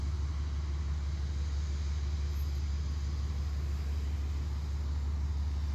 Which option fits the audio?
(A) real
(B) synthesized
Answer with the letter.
A